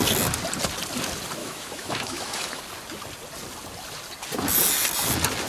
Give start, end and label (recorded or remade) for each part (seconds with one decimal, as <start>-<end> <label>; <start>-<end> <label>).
0.0-1.4 recorded; 1.4-2.6 remade; 2.6-5.5 recorded